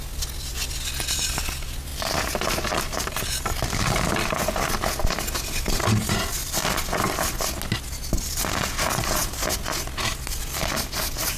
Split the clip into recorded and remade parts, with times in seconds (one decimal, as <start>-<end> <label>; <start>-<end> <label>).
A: 0.0-11.4 recorded